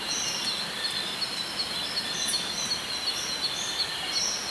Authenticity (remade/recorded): recorded